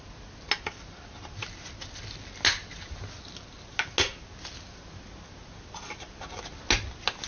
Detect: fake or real real